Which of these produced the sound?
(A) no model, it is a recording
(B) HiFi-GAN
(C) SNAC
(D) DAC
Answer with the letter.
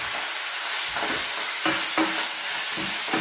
A